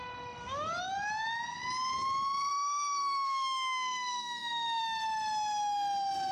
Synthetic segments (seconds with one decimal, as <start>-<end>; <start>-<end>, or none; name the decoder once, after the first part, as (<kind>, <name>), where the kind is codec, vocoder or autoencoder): 2.5-4.8 (autoencoder, DAC-VAE)